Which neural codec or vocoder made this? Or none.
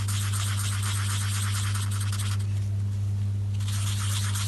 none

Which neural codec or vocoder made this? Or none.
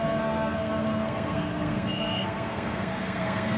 codec, SNAC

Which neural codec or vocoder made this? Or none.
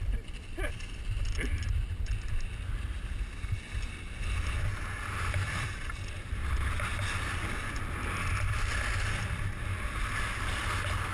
none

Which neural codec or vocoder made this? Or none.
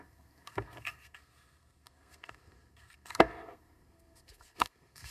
codec, SNAC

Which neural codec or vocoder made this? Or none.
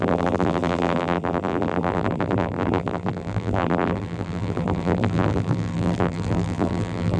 vocoder, BigVGAN v2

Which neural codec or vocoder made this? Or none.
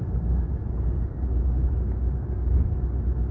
none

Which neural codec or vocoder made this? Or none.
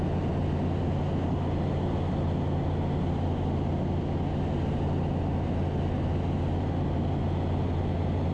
none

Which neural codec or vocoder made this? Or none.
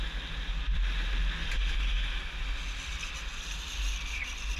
none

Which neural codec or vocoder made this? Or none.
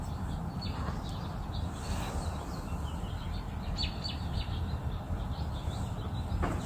vocoder, BigVGAN v2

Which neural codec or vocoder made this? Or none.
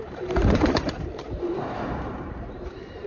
vocoder, BigVGAN v2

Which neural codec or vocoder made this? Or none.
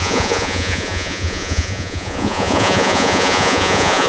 vocoder, Vocos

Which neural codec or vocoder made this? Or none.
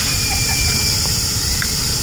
vocoder, BigVGAN v2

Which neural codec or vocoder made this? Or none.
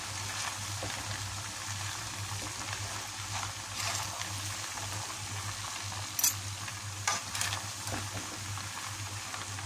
none